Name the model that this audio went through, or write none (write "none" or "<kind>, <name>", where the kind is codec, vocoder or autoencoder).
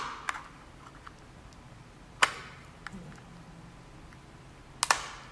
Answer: none